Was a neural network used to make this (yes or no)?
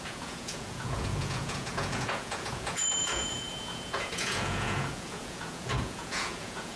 yes